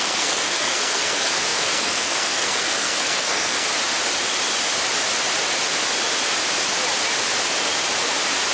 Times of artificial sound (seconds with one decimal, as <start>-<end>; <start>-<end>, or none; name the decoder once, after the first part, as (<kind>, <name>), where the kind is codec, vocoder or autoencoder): 0.0-3.7 (codec, SNAC)